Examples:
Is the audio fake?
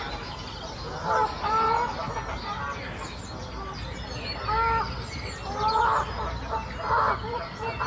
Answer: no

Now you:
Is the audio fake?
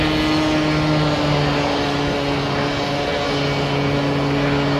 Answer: no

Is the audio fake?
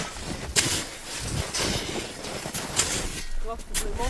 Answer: no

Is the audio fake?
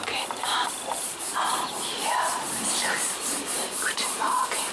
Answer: yes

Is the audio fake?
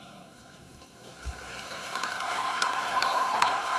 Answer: yes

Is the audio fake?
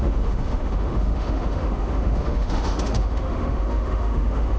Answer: yes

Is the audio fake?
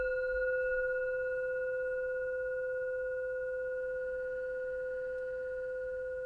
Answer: no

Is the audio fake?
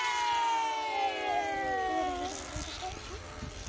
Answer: no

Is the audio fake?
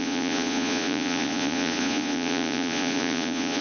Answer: yes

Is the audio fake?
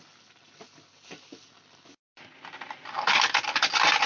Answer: no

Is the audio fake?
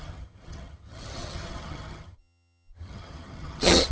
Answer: yes